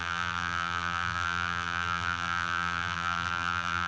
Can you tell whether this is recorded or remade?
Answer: remade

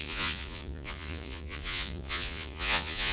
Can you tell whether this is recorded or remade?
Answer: remade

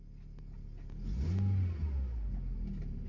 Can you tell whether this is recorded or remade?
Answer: recorded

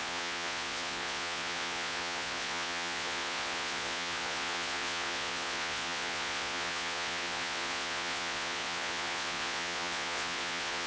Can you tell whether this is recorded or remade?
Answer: remade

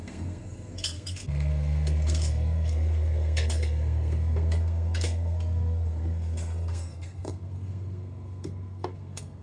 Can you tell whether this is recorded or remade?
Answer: remade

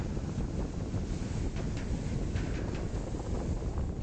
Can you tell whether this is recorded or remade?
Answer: recorded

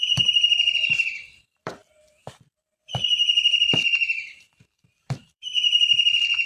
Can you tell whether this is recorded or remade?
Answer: remade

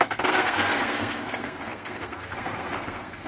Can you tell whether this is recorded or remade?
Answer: remade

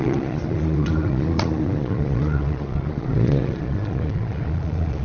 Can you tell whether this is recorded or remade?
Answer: remade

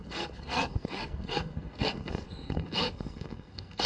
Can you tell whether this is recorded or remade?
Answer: remade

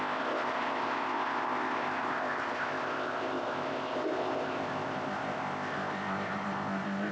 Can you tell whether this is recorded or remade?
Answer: remade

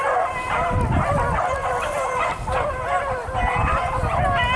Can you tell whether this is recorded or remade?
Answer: recorded